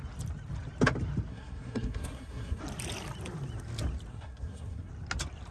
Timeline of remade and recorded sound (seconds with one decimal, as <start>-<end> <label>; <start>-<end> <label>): 0.0-1.3 recorded; 1.3-2.6 remade; 2.6-4.1 recorded; 4.1-4.9 remade; 4.9-5.5 recorded